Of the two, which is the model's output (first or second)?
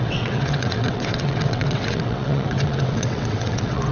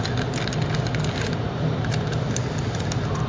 first